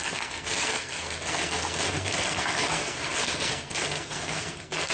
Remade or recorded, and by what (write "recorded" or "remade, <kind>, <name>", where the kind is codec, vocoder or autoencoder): remade, codec, SNAC